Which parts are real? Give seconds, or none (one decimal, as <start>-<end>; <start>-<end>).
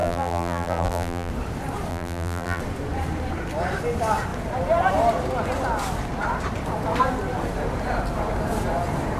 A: 1.3-1.9; 2.6-9.2